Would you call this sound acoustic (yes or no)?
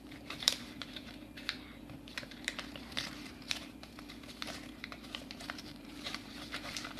no